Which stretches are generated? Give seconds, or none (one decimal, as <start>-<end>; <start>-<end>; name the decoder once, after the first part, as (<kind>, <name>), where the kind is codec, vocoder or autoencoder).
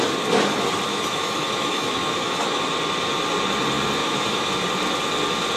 0.9-2.6 (autoencoder, DAC-VAE); 4.0-4.5